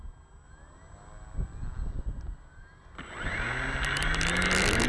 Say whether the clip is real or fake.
real